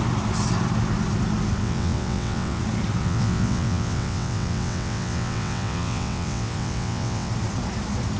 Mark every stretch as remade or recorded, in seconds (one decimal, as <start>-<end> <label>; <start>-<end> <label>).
0.0-1.6 recorded; 1.6-2.6 remade; 2.6-3.0 recorded; 3.0-7.3 remade; 7.3-8.2 recorded